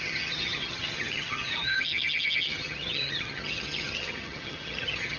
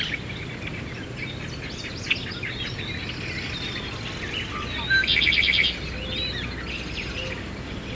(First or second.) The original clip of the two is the second